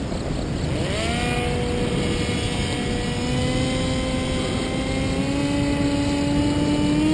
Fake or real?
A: real